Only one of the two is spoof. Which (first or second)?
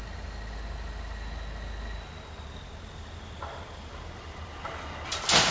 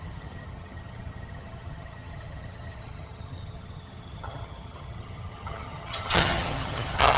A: second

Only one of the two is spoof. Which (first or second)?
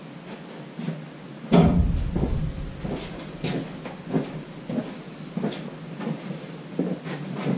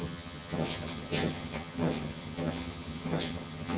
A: second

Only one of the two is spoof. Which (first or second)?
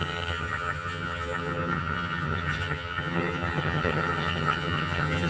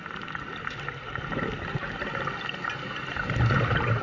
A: first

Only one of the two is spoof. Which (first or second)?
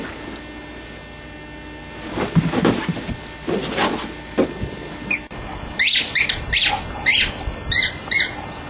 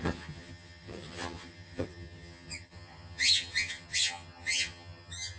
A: second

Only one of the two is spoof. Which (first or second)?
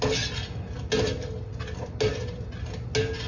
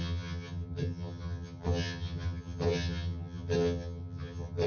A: second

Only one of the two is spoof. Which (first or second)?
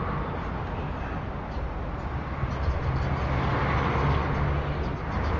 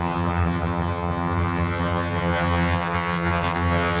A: second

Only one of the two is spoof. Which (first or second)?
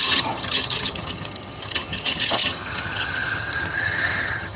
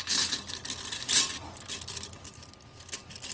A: first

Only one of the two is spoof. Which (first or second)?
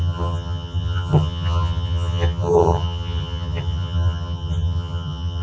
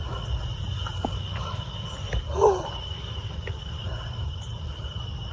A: first